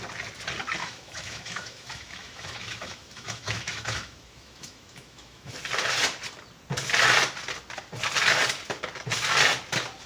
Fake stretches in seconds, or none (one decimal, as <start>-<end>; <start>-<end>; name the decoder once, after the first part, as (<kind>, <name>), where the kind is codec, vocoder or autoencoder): 0.8-5.5 (autoencoder, DAC-VAE)